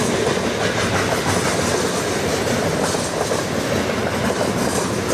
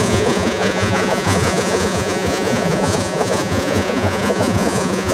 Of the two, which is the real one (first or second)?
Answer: first